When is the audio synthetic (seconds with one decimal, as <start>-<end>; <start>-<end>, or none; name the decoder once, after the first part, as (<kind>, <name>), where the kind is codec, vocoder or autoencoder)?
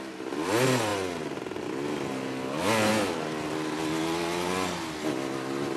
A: none